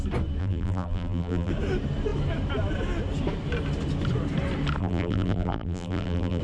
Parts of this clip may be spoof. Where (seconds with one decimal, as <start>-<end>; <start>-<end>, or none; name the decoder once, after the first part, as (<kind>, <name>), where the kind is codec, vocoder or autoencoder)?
0.4-1.5 (vocoder, BigVGAN v2); 4.8-6.4